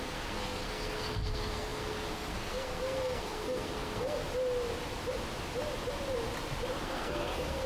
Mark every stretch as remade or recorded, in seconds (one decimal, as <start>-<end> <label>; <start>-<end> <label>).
0.0-4.2 remade; 4.2-6.8 recorded; 6.8-7.7 remade